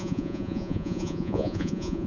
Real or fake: fake